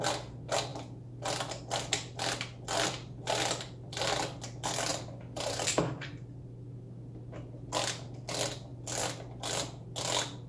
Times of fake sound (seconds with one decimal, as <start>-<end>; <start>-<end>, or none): 0.7-4.0; 4.9-6.1